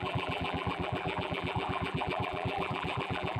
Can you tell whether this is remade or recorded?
remade